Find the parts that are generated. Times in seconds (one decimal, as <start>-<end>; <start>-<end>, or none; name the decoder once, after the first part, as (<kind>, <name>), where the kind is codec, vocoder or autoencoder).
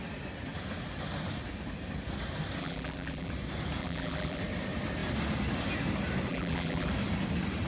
2.6-3.3 (vocoder, BigVGAN v2); 3.8-4.4; 6.3-6.9